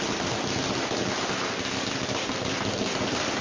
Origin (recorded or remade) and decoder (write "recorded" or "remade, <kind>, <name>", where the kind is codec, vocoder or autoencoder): recorded